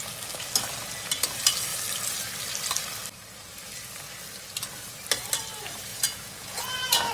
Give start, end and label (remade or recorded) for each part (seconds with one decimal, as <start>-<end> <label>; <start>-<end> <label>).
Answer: 0.0-5.9 recorded; 5.9-7.1 remade